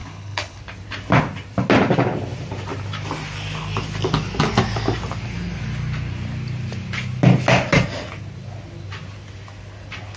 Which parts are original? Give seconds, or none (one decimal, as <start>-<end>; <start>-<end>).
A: 0.6-10.2